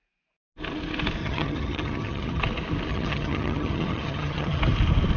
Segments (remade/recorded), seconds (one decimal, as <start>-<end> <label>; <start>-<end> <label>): 0.0-1.2 recorded; 1.2-2.4 remade; 2.4-2.9 recorded; 2.9-4.6 remade; 4.6-5.2 recorded